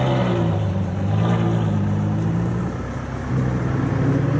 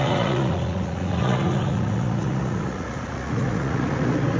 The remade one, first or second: second